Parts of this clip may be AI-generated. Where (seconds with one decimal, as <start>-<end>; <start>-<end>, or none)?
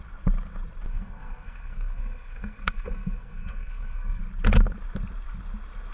0.9-4.2